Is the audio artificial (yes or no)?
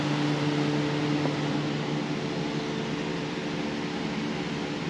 no